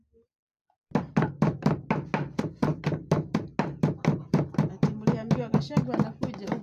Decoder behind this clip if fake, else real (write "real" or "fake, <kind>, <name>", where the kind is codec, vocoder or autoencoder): real